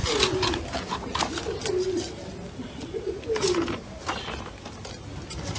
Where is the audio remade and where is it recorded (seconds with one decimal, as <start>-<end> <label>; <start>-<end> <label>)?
0.0-5.6 recorded